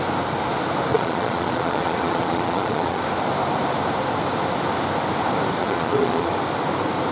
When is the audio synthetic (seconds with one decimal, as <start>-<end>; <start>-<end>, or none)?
0.9-3.0; 5.6-6.3